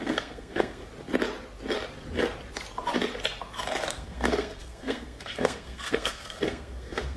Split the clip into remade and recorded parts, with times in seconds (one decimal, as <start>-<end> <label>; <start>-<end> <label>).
0.0-0.8 remade; 0.8-3.9 recorded; 3.9-7.2 remade

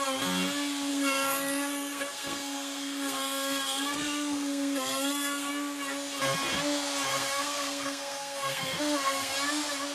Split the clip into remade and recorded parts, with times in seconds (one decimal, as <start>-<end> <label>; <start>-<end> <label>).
0.0-0.9 recorded; 0.9-5.5 remade; 5.5-7.1 recorded; 7.1-9.3 remade; 9.3-9.9 recorded

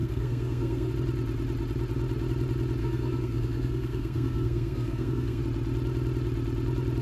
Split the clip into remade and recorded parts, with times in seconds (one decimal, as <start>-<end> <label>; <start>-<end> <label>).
0.0-0.9 remade; 0.9-2.8 recorded; 2.8-5.4 remade; 5.4-7.0 recorded

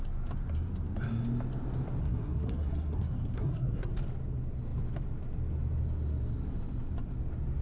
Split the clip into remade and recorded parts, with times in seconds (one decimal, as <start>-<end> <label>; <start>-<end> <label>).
0.0-2.0 recorded; 2.0-3.9 remade; 3.9-7.6 recorded

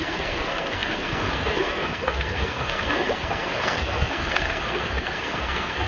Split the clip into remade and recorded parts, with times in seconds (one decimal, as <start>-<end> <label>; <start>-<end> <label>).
0.0-5.9 remade

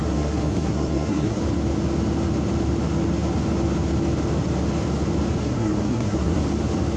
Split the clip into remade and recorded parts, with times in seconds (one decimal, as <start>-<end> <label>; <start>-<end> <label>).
0.0-1.4 remade; 1.4-5.4 recorded; 5.4-6.4 remade; 6.4-7.0 recorded

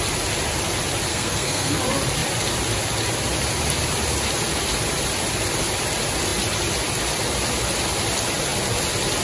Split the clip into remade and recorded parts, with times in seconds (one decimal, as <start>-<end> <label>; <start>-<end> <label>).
0.0-1.1 recorded; 1.1-1.8 remade; 1.8-9.2 recorded